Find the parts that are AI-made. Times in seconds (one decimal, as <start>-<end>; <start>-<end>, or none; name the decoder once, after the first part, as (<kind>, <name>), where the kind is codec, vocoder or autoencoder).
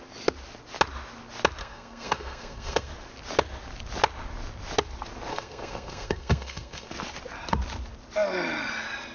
1.6-2.9 (codec, SNAC); 5.3-6.9